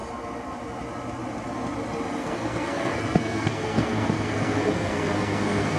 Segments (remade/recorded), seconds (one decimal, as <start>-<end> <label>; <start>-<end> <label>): 0.0-2.2 recorded; 2.2-5.8 remade